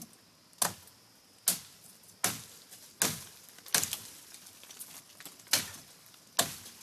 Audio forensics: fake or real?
real